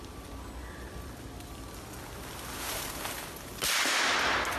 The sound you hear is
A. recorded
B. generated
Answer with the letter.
A